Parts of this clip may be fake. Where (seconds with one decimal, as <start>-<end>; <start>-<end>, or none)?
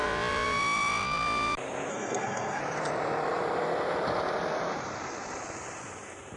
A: 1.9-2.6